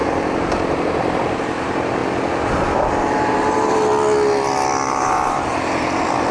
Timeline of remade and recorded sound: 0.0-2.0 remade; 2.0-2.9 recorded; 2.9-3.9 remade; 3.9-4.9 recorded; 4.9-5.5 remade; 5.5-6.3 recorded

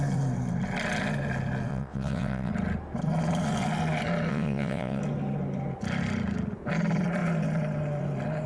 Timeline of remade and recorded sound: 0.0-1.7 recorded; 1.7-2.5 remade; 2.5-4.3 recorded; 4.3-5.0 remade; 5.0-8.5 recorded